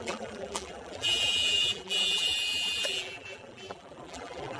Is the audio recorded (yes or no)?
no